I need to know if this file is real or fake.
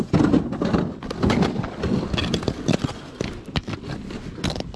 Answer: real